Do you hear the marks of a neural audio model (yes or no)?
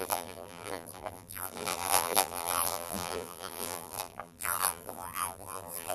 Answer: yes